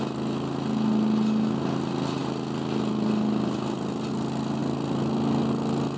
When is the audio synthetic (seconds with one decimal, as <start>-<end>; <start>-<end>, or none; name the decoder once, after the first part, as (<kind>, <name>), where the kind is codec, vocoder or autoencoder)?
none